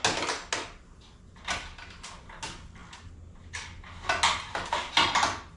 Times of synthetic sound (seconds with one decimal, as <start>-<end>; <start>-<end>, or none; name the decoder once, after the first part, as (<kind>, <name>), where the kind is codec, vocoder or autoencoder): none